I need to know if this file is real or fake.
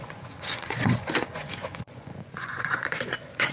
fake